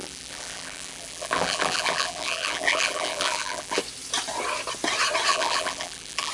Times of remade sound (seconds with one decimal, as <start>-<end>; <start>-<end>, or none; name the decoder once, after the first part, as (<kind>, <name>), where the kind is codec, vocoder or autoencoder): 0.0-3.8 (vocoder, BigVGAN v2); 5.3-6.3